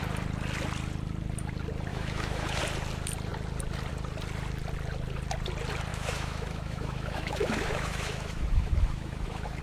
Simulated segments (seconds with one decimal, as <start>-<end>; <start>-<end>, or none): 1.9-2.6; 5.9-9.6